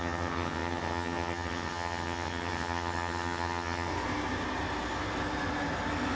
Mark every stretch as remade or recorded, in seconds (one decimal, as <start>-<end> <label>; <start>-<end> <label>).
0.0-3.9 remade; 3.9-6.2 recorded